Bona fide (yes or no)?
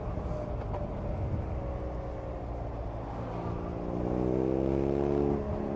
yes